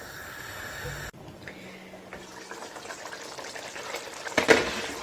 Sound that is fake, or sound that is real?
real